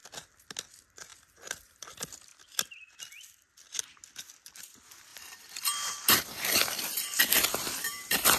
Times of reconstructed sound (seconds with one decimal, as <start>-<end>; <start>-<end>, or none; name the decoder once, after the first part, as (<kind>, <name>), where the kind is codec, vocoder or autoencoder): 0.6-1.1 (vocoder, BigVGAN v2); 1.6-2.3; 4.3-8.4